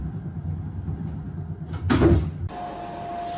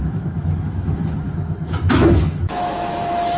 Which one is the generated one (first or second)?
second